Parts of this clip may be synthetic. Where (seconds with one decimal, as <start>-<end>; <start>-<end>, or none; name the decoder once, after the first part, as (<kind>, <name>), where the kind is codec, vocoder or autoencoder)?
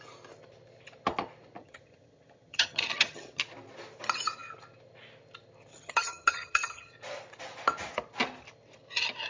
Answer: 1.6-3.4 (vocoder, HiFi-GAN); 5.7-6.9